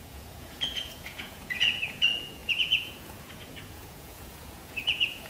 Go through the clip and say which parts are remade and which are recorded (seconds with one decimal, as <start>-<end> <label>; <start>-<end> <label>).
0.0-5.3 remade